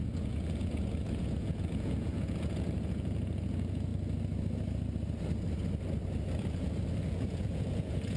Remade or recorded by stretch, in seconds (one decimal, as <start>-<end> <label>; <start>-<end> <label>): 0.0-3.9 remade; 3.9-7.1 recorded; 7.1-8.2 remade